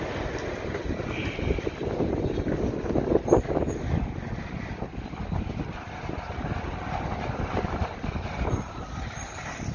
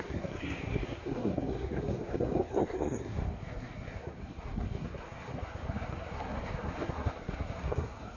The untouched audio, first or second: first